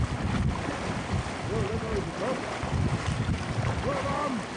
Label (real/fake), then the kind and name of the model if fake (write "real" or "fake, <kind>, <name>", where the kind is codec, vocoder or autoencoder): real